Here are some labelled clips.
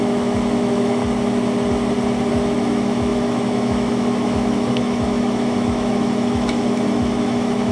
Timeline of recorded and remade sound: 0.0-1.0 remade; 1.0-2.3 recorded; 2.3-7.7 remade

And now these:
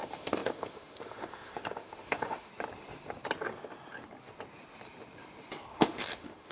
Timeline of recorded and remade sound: 0.0-2.5 remade; 2.5-5.7 recorded; 5.7-6.5 remade

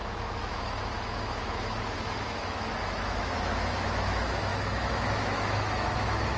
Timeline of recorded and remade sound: 0.0-6.4 remade

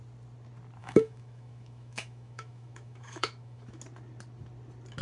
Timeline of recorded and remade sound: 0.0-0.8 recorded; 0.8-3.8 remade; 3.8-5.0 recorded

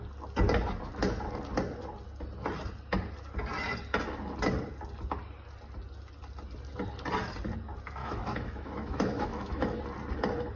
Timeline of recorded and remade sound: 0.0-8.0 recorded; 8.0-9.8 remade; 9.8-10.6 recorded

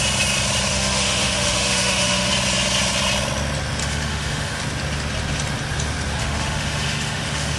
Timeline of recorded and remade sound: 0.0-0.7 recorded; 0.7-2.3 remade; 2.3-3.8 recorded; 3.8-4.6 remade; 4.6-6.2 recorded; 6.2-7.6 remade